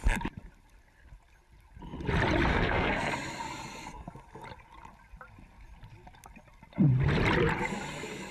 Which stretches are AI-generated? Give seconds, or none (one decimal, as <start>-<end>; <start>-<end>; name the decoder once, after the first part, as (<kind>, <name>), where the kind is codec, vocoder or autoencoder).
2.5-3.1 (codec, SNAC)